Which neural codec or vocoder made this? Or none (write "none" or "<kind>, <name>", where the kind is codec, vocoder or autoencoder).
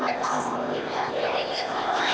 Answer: codec, ZipCodec